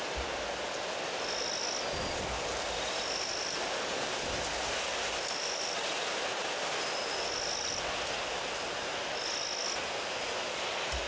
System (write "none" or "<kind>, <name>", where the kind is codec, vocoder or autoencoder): none